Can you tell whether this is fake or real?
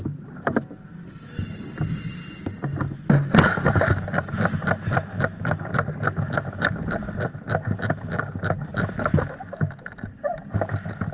real